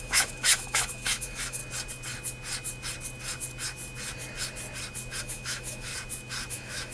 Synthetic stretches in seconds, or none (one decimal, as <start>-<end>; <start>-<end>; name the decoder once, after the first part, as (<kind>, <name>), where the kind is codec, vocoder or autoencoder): 0.0-1.6 (autoencoder, DAC-VAE); 5.2-5.9; 6.5-6.9

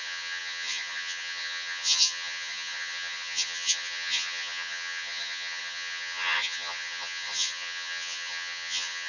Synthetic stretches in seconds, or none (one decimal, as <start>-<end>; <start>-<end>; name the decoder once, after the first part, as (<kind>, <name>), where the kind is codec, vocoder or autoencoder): 0.0-9.1 (vocoder, HiFi-GAN)

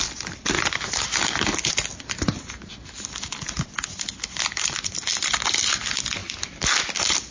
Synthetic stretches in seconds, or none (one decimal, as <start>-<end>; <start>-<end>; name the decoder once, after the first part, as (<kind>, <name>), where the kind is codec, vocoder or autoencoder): none

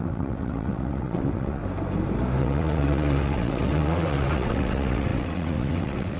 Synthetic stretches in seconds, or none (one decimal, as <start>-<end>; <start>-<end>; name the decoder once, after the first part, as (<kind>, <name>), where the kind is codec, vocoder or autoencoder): 0.0-1.6 (vocoder, WaveNeXt); 2.4-6.2

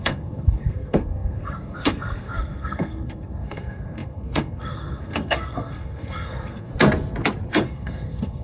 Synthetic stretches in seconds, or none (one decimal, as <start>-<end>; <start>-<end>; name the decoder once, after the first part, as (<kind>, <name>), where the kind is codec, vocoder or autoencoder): 0.0-6.7 (codec, SNAC); 7.5-8.4